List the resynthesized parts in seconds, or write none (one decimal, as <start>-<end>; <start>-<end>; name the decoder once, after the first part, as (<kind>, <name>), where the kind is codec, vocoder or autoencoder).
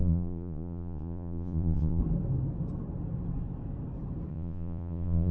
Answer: 0.0-2.0 (vocoder, Vocos); 4.3-5.3